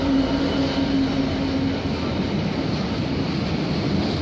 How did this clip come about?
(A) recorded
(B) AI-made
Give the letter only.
A